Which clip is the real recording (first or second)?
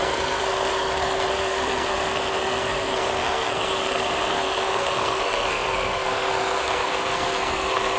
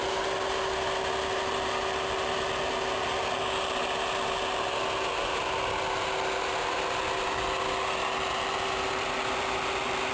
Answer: second